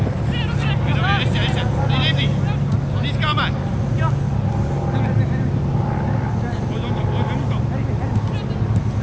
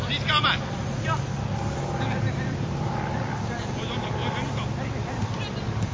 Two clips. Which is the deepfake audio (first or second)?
second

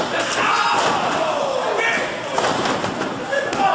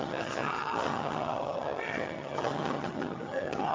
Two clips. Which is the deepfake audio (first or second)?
second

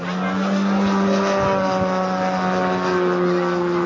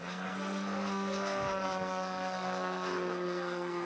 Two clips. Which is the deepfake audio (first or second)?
second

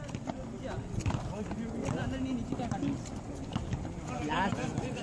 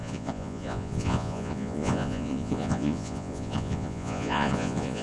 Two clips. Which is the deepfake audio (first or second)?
second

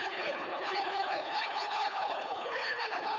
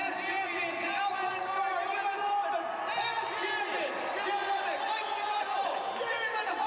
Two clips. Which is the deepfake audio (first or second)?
first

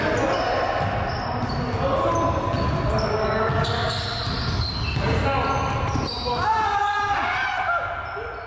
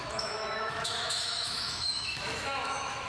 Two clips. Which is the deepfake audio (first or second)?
second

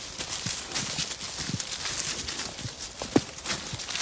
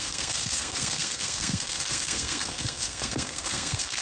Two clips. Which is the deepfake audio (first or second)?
second